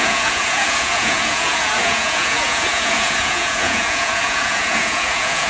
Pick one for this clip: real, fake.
fake